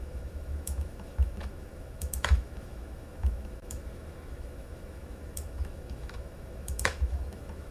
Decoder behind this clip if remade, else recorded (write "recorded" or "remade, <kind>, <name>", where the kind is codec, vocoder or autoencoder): remade, autoencoder, DAC-VAE